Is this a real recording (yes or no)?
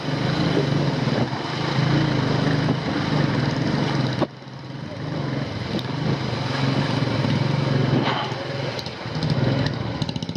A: yes